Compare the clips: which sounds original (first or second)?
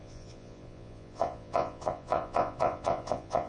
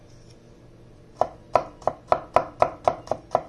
second